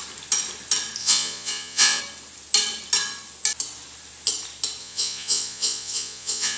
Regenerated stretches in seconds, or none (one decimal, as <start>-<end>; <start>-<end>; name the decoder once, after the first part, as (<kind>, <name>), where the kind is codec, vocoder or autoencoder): 1.0-2.0 (vocoder, Vocos); 4.8-6.6